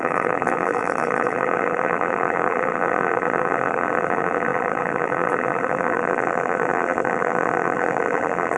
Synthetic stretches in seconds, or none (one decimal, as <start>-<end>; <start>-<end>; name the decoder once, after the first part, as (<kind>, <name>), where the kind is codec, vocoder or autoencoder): 0.0-8.6 (vocoder, BigVGAN v2)